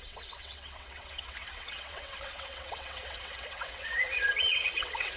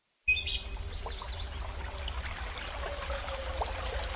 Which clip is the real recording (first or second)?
second